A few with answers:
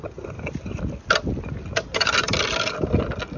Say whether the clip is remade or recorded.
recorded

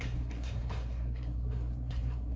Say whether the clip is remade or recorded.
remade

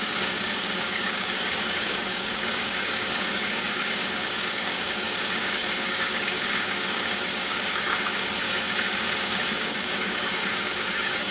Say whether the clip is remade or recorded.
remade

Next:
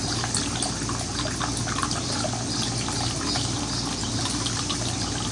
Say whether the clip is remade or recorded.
recorded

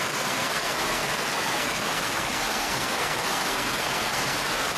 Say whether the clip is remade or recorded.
remade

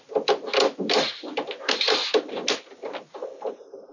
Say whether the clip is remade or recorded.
recorded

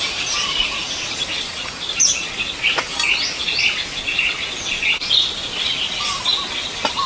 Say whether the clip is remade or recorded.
recorded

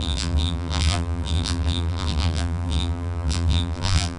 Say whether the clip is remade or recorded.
remade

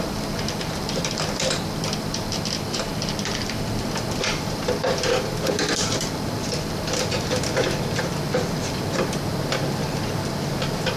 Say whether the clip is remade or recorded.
remade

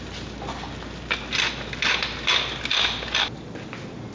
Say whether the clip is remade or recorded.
recorded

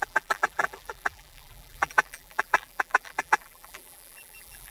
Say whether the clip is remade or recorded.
remade